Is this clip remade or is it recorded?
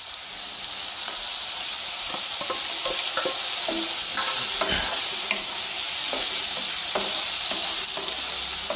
recorded